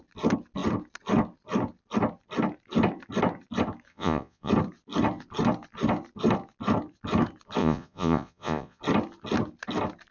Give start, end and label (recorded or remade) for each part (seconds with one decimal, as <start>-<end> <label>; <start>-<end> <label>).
0.0-3.9 recorded; 3.9-4.5 remade; 4.5-7.6 recorded; 7.6-8.8 remade; 8.8-10.1 recorded